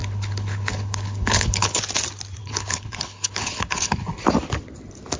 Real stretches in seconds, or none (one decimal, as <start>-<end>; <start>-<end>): 1.8-2.4; 4.2-5.2